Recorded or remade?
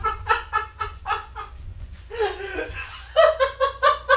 remade